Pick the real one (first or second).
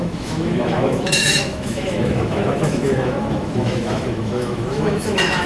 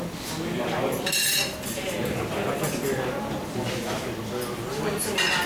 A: second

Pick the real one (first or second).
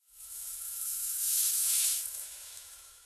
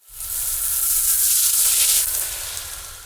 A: second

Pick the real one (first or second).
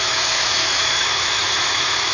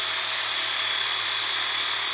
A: second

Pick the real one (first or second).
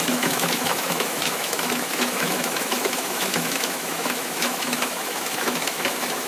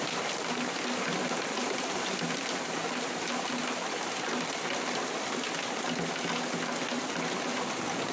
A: second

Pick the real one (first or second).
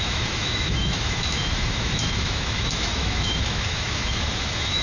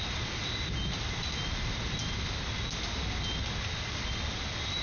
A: second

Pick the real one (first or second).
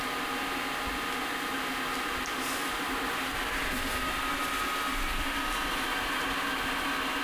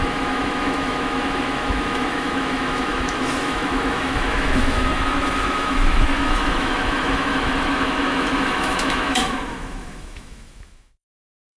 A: first